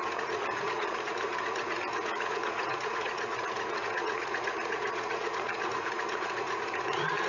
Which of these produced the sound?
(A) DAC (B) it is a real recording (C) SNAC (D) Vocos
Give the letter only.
D